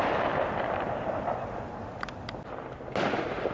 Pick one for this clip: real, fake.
real